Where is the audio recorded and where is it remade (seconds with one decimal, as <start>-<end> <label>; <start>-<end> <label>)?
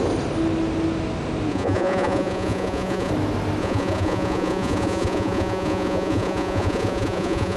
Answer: 0.0-1.5 recorded; 1.5-3.1 remade; 3.1-3.6 recorded; 3.6-7.6 remade